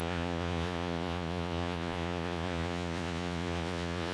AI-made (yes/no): yes